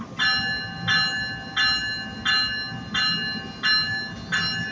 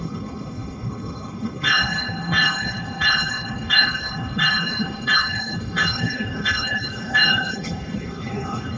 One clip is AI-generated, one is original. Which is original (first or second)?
first